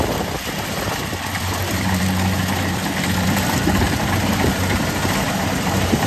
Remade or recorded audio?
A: remade